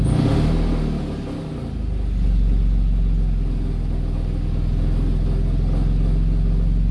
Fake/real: real